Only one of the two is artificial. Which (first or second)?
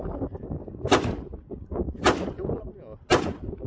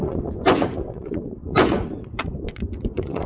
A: second